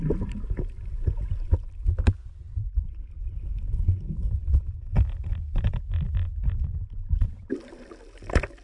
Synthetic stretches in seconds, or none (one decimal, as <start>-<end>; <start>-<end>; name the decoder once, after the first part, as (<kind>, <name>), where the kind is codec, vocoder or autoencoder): 2.2-3.1 (vocoder, BigVGAN v2)